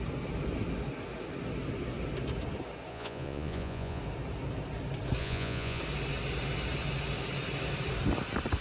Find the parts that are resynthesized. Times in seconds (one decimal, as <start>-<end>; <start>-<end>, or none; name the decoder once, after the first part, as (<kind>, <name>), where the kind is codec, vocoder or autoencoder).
2.9-4.0 (vocoder, Vocos); 5.2-5.8